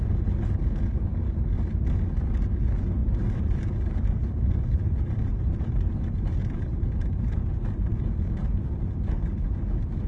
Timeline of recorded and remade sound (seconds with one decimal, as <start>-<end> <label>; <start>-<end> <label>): 0.0-3.0 recorded; 3.0-8.0 remade; 8.0-10.1 recorded